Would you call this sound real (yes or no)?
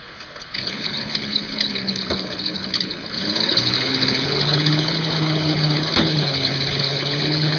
no